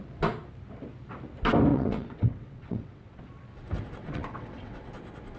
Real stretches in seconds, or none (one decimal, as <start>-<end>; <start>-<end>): 0.0-1.7; 3.2-4.0; 4.9-5.4